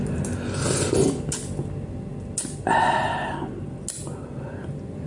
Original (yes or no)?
yes